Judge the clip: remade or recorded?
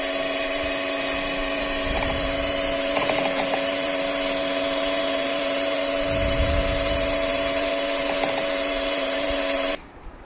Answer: remade